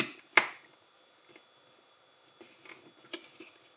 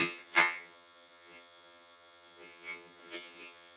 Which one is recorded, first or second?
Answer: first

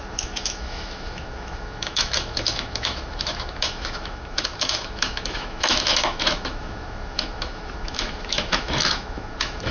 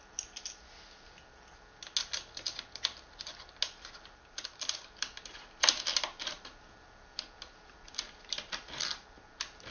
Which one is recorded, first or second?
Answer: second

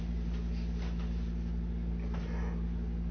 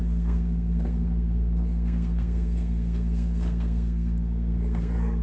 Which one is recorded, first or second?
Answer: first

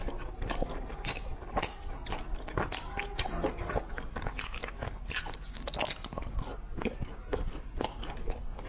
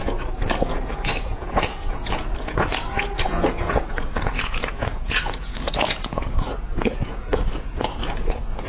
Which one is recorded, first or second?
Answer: first